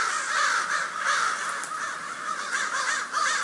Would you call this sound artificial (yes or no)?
no